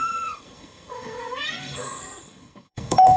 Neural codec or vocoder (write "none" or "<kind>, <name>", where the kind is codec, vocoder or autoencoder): codec, SNAC